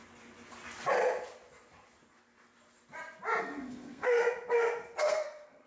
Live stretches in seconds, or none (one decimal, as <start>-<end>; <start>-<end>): 0.0-3.4; 4.2-5.0